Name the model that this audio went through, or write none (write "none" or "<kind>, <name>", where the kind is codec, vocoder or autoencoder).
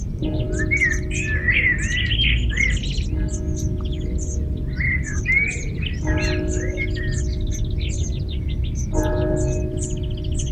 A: none